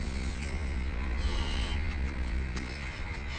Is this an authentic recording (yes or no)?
no